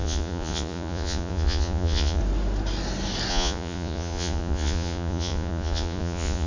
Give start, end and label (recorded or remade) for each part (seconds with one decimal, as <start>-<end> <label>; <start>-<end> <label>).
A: 0.0-2.2 remade; 2.2-3.3 recorded; 3.3-6.5 remade